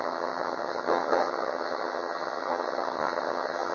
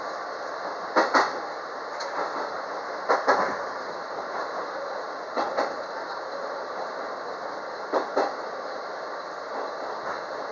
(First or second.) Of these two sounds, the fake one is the first